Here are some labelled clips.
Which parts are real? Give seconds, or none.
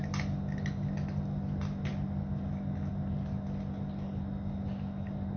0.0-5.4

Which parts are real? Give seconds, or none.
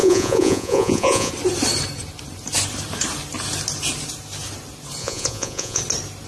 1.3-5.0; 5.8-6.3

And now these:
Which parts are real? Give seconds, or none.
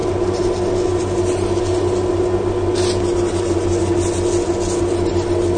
0.0-5.6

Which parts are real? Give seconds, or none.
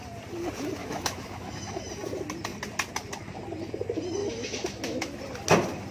0.0-0.8; 1.8-4.2; 5.2-5.9